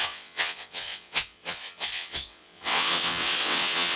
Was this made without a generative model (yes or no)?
no